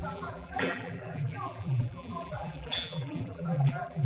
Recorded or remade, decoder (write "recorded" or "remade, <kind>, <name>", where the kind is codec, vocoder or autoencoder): remade, vocoder, BigVGAN v2